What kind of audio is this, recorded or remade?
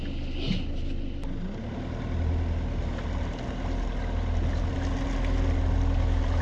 recorded